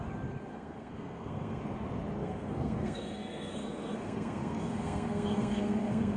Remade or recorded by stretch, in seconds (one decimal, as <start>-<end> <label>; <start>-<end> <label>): 0.0-0.5 recorded; 0.5-1.6 remade; 1.6-2.2 recorded; 2.2-6.2 remade